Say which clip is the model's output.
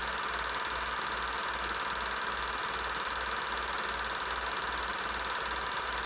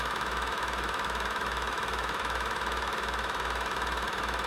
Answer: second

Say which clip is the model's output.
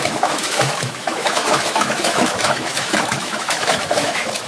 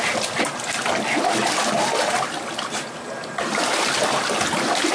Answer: first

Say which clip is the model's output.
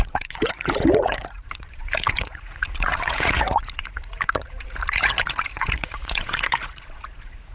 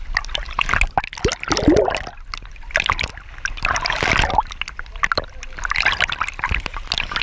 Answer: first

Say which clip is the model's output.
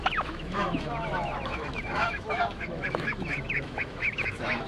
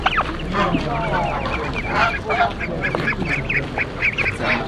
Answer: first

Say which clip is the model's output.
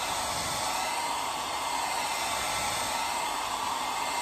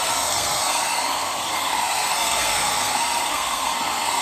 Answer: second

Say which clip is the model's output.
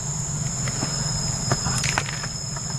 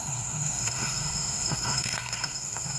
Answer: second